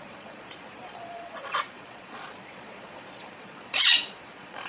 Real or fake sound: fake